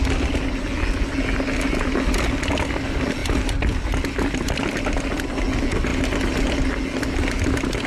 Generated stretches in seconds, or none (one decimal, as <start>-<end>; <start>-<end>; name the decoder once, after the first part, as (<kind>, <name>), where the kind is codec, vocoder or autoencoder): 3.2-4.9 (vocoder, BigVGAN v2)